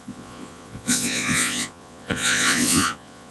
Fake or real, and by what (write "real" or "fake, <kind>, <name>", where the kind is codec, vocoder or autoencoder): fake, vocoder, Vocos